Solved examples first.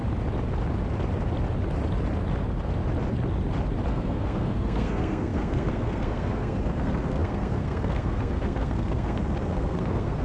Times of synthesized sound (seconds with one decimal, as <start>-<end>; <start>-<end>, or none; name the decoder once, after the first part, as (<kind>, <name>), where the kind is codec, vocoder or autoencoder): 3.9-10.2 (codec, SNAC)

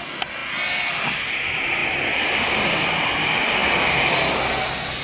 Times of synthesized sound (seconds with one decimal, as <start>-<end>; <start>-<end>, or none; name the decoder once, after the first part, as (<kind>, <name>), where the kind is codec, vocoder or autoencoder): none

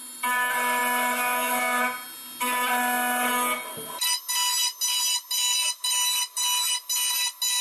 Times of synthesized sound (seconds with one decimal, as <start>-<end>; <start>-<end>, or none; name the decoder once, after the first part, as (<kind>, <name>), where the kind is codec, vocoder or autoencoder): none